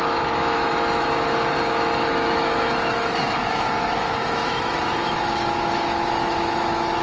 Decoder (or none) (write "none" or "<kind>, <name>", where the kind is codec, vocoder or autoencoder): autoencoder, DAC-VAE